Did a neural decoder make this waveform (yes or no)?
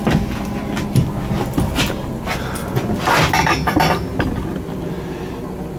no